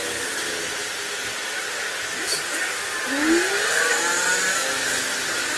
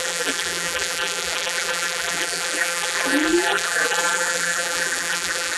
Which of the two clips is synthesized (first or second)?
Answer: second